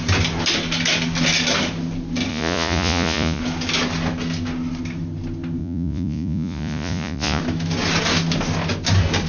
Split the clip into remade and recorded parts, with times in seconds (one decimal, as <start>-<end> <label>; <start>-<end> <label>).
0.0-2.3 recorded; 2.3-3.4 remade; 3.4-5.6 recorded; 5.6-7.4 remade; 7.4-9.3 recorded